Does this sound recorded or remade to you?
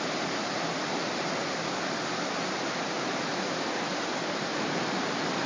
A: recorded